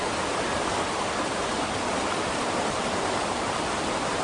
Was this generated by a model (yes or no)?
no